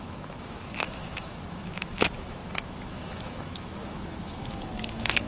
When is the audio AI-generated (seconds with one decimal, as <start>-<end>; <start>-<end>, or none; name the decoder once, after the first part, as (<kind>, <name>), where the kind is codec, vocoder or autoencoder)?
0.0-5.3 (autoencoder, DAC-VAE)